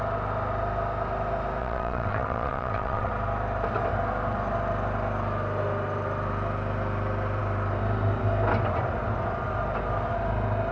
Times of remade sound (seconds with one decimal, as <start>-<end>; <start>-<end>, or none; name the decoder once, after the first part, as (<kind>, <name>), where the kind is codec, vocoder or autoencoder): 1.6-3.1 (vocoder, WaveNeXt)